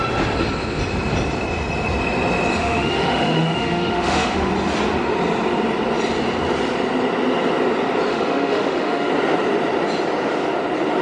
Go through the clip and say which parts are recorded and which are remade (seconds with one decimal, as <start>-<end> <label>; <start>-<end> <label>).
0.0-2.6 recorded; 2.6-4.5 remade; 4.5-8.1 recorded; 8.1-9.1 remade; 9.1-11.0 recorded